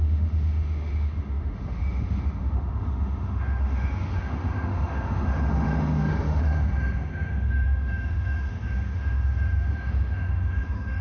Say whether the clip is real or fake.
fake